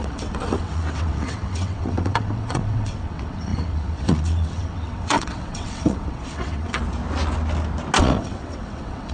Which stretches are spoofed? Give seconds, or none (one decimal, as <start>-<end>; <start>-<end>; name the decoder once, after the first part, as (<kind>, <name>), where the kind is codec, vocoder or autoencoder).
0.0-6.8 (vocoder, WaveNeXt); 8.0-9.1